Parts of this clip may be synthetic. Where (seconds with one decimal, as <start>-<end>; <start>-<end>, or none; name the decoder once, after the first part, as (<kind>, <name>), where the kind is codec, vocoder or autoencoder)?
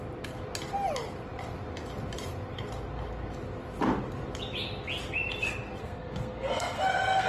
5.8-7.3 (codec, SNAC)